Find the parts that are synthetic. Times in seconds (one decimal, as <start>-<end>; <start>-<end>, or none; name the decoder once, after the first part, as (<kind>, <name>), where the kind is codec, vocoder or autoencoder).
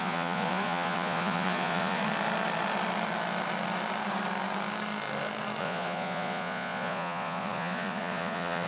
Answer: 0.0-2.0 (vocoder, Vocos); 5.6-8.7